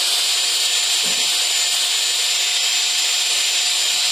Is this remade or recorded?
recorded